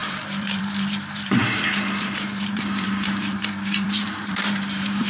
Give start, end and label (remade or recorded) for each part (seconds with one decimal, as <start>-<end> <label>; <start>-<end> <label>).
0.0-5.1 remade